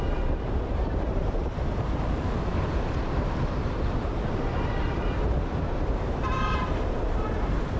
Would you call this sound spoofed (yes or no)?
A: yes